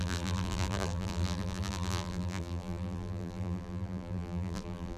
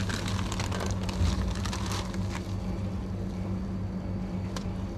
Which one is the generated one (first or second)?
first